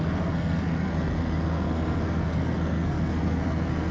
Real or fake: fake